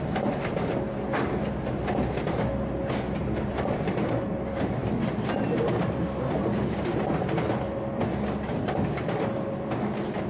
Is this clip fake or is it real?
real